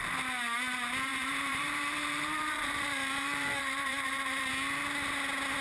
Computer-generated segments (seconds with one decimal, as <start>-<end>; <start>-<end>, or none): 1.1-4.5